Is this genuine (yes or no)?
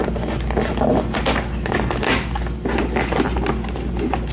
yes